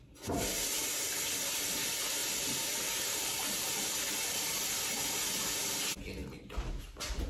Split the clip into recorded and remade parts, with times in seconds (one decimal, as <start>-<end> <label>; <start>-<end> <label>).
0.0-2.2 recorded; 2.2-3.8 remade; 3.8-7.3 recorded